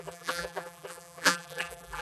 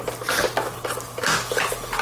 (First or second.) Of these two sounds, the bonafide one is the second